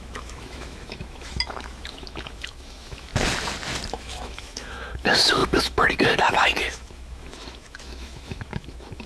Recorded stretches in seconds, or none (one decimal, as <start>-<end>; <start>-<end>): 3.1-3.9